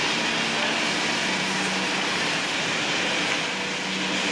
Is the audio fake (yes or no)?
no